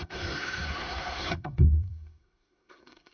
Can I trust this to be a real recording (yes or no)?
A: no